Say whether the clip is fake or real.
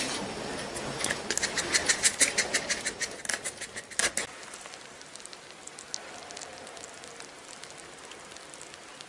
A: real